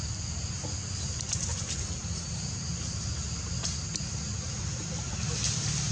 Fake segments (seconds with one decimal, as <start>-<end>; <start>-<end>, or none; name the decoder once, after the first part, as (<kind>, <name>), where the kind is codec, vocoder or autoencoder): none